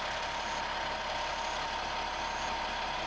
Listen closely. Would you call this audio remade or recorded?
recorded